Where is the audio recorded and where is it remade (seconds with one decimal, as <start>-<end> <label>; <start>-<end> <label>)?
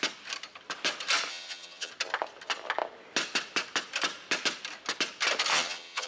0.0-1.3 recorded; 1.3-1.9 remade; 1.9-5.5 recorded; 5.5-6.1 remade